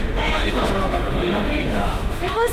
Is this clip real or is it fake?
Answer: fake